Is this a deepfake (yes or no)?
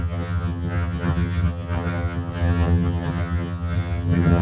yes